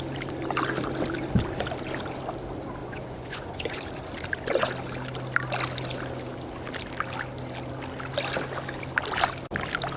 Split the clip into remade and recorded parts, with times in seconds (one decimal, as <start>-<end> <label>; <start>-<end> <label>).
0.0-2.8 recorded; 2.8-3.8 remade; 3.8-10.0 recorded